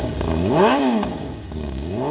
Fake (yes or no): yes